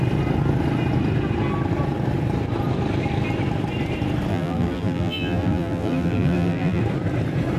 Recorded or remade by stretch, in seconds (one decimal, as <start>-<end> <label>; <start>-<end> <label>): 0.0-4.3 recorded; 4.3-6.8 remade; 6.8-7.6 recorded